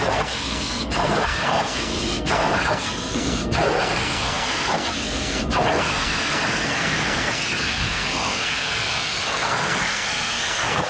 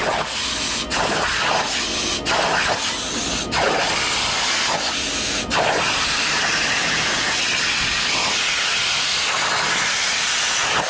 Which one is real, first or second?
second